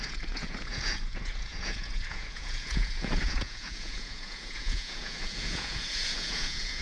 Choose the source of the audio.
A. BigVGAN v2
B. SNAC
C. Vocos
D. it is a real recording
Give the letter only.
C